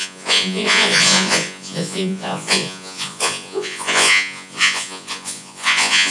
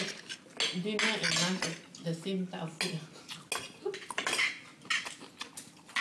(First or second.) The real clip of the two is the second